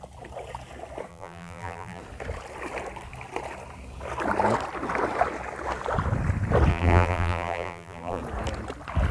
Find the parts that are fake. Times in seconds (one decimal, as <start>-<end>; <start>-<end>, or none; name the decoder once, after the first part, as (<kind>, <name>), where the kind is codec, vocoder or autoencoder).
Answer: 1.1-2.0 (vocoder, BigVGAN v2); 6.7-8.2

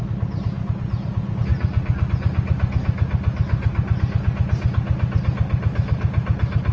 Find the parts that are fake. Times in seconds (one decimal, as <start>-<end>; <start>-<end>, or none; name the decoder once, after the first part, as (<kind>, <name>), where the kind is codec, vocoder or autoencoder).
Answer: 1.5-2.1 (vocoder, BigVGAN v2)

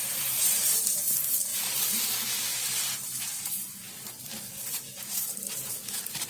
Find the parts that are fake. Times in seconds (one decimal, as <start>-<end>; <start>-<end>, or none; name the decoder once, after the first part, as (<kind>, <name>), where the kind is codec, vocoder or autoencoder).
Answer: 0.0-1.0 (vocoder, BigVGAN v2); 1.5-2.1; 2.5-6.3

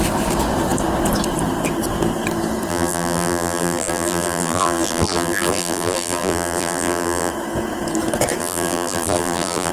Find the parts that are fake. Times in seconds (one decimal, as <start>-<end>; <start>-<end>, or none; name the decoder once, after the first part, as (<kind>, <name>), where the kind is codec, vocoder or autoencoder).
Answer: 2.7-7.3 (vocoder, BigVGAN v2); 8.4-9.7

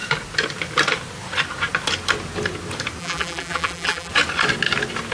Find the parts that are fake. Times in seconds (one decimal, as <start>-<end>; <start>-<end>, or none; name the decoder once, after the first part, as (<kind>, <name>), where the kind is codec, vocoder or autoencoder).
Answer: 3.0-4.1 (vocoder, BigVGAN v2)